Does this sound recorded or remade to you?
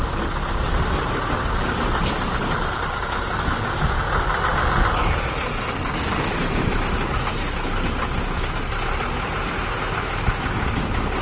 recorded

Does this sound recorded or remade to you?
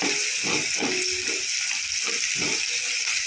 recorded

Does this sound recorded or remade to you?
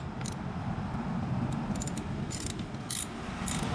recorded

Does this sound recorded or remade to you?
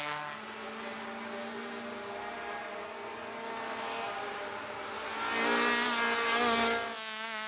recorded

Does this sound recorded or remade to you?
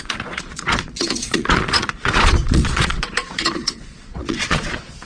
remade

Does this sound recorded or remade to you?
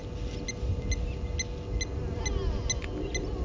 recorded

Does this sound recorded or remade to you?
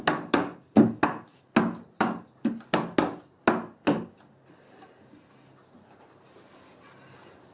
recorded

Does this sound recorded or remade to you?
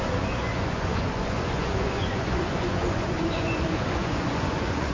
remade